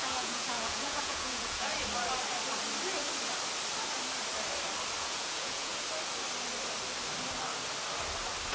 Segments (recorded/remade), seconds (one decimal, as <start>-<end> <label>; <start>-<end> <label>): 0.0-1.7 remade; 1.7-5.0 recorded; 5.0-5.7 remade; 5.7-8.5 recorded